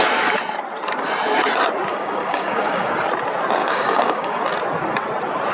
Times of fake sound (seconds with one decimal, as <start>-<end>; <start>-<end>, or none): 1.9-2.9; 3.6-4.4